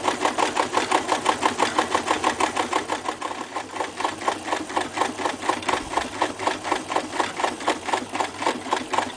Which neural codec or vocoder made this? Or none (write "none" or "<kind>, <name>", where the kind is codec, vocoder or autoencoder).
none